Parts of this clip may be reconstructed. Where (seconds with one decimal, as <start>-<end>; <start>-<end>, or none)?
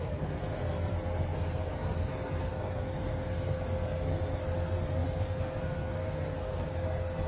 0.0-7.3